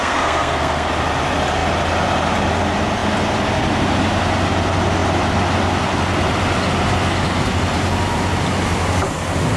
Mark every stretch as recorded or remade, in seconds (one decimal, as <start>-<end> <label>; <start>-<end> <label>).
0.0-0.9 remade; 0.9-9.6 recorded